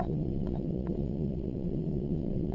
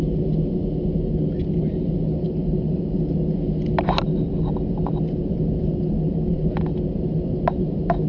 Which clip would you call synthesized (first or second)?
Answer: first